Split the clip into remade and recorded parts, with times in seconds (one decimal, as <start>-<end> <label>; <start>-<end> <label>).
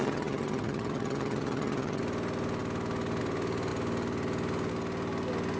0.0-2.0 remade; 2.0-5.6 recorded